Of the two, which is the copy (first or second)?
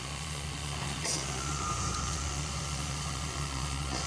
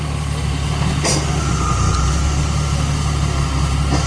first